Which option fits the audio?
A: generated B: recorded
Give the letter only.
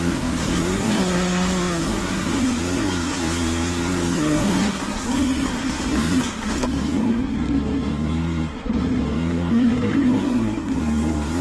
A